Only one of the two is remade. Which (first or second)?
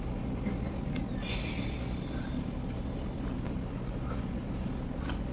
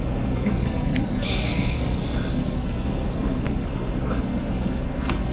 second